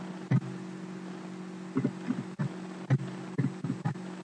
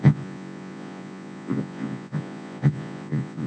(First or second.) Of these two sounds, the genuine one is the first